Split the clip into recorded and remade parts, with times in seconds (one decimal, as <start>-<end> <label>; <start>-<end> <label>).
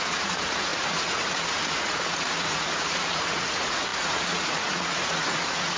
0.0-5.8 remade